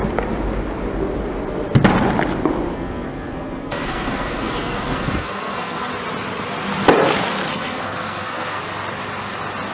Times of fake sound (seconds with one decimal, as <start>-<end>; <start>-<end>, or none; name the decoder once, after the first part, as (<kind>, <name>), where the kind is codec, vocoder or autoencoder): 2.7-5.9 (codec, SNAC); 7.4-8.6